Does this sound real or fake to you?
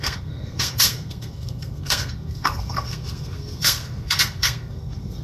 fake